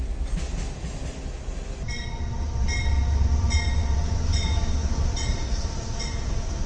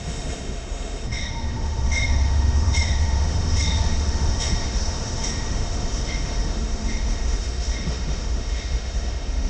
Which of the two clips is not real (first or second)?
second